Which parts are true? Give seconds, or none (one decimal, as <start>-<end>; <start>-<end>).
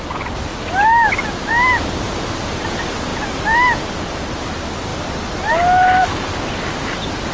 0.0-7.3